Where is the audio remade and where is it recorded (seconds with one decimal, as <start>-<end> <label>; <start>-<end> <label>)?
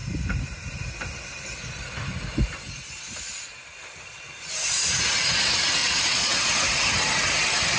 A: 0.0-5.8 recorded; 5.8-6.5 remade; 6.5-7.8 recorded